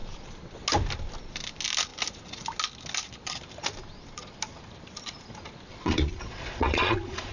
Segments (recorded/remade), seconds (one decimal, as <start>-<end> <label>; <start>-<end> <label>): 0.0-5.7 recorded; 5.7-7.3 remade

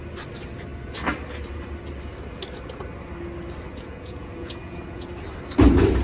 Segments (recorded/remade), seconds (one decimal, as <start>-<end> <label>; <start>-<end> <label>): 0.0-3.7 recorded; 3.7-5.1 remade; 5.1-6.0 recorded

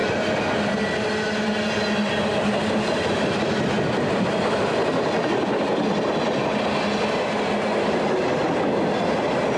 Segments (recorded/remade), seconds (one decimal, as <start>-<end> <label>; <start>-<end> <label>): 0.0-9.6 recorded

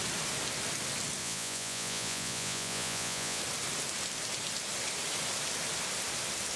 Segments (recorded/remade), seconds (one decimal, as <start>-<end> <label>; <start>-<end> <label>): 0.0-1.2 recorded; 1.2-3.4 remade; 3.4-6.6 recorded

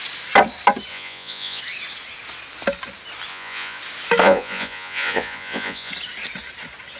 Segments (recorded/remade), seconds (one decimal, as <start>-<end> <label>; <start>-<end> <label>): 0.0-0.9 recorded; 0.9-1.6 remade; 1.6-3.3 recorded; 3.3-3.8 remade; 3.8-4.2 recorded; 4.2-5.9 remade; 5.9-7.0 recorded